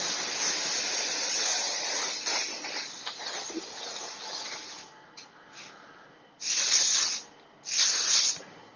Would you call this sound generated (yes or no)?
no